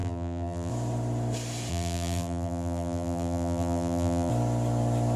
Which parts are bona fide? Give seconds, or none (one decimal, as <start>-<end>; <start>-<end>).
0.7-1.7; 4.3-5.2